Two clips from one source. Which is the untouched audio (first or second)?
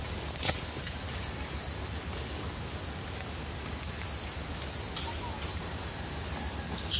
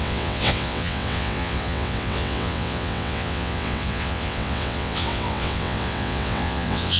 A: first